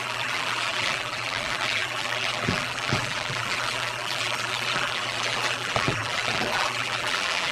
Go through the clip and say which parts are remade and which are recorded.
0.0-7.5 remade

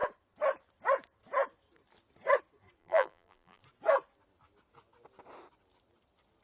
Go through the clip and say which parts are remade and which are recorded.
0.0-2.8 recorded; 2.8-3.6 remade; 3.6-6.4 recorded